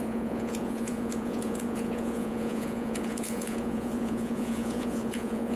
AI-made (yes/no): yes